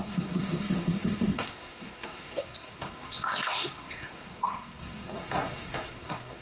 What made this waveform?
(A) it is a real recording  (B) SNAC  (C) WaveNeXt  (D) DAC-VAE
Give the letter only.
B